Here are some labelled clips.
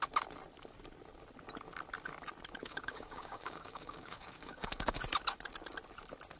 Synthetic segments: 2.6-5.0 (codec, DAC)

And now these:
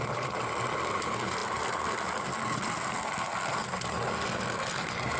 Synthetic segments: none

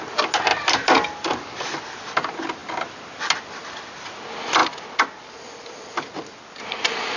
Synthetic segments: 0.5-1.8 (vocoder, BigVGAN v2)

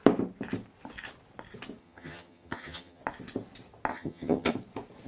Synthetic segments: 1.8-3.0 (vocoder, HiFi-GAN); 3.9-4.5

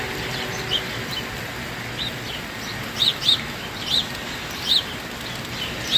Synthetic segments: none

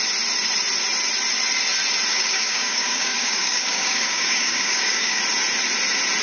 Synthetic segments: 2.1-5.2 (codec, DAC)

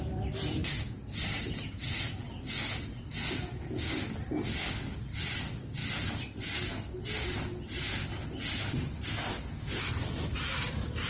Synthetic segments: none